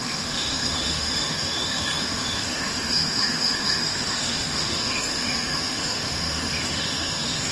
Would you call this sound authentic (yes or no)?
no